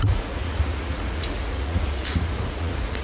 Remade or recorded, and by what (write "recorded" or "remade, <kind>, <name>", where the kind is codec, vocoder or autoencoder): remade, vocoder, Vocos